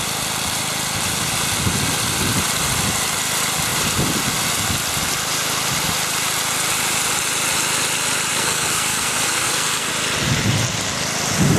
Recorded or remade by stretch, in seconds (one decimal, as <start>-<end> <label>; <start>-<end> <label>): 0.0-8.3 recorded; 8.3-9.9 remade; 9.9-11.6 recorded